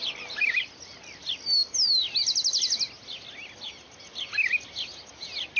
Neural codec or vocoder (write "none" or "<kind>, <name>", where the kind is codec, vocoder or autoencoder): none